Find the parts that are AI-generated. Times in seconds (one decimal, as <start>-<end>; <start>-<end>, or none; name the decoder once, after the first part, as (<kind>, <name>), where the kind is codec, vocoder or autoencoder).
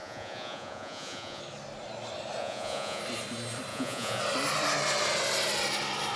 0.0-1.4 (vocoder, Vocos); 2.4-3.0; 3.7-4.2